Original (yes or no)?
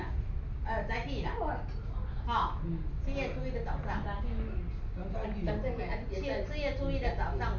yes